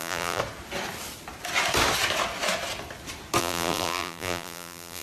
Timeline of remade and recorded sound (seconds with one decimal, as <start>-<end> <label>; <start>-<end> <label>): 0.0-0.4 remade; 0.4-3.4 recorded; 3.4-5.0 remade